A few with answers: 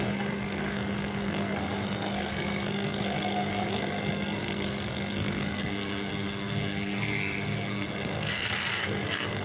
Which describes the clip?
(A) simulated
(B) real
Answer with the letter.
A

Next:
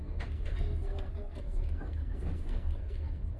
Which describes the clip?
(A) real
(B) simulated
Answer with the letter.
B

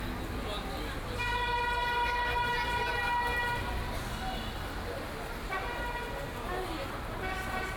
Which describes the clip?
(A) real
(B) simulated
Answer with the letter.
A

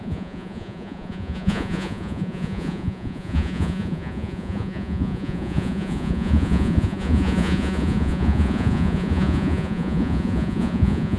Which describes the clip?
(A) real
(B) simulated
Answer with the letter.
B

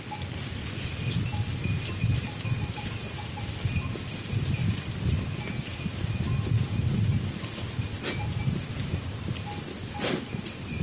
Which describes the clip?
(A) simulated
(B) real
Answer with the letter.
B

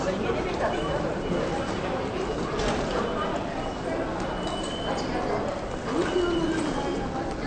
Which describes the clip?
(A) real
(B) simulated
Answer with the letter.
A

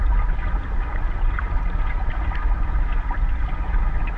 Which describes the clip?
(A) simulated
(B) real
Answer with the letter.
B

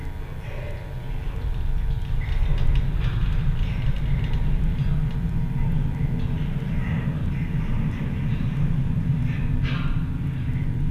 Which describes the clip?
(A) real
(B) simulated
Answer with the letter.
A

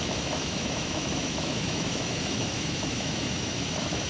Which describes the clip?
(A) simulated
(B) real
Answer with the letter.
A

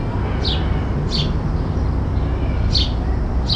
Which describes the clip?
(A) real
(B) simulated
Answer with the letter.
A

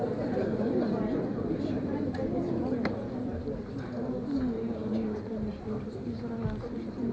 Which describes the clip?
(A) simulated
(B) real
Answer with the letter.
B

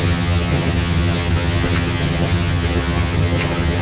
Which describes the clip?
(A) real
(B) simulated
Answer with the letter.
B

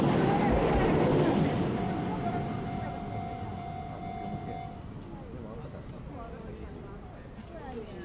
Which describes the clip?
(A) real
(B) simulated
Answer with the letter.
A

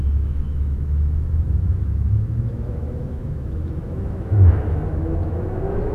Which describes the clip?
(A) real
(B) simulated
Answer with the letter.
B